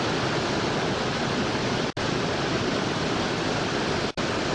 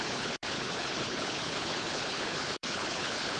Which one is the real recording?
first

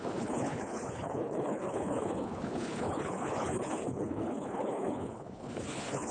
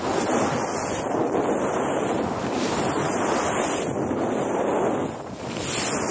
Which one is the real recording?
second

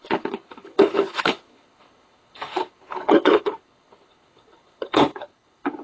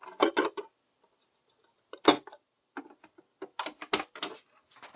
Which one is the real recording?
second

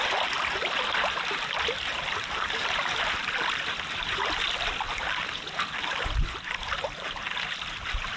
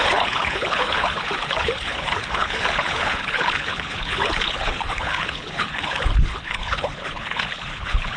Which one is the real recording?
first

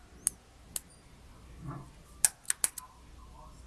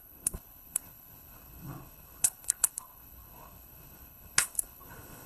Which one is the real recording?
first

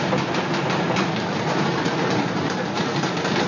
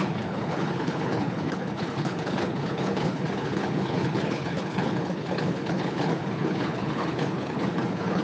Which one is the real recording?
first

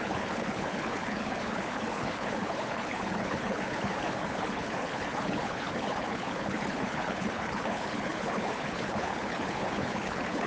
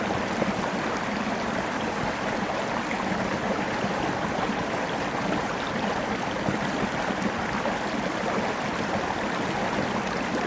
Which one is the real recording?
second